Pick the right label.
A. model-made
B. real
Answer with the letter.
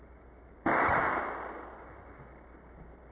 B